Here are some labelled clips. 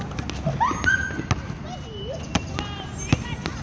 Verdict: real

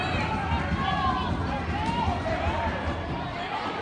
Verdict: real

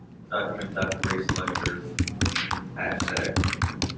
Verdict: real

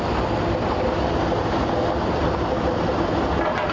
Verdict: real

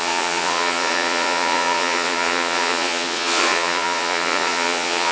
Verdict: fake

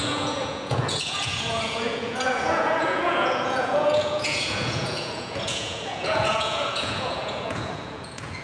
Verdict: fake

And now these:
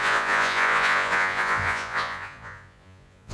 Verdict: fake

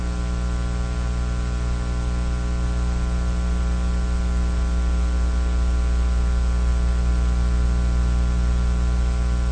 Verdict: real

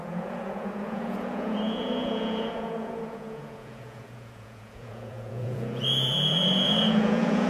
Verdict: fake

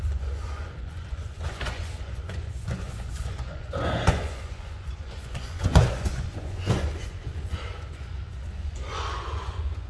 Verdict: fake